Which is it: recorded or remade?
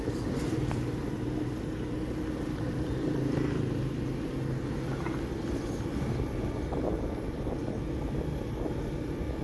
recorded